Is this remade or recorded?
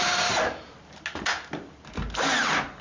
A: recorded